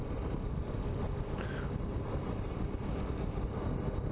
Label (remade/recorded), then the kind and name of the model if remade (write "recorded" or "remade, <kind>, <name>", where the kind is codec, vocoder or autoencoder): recorded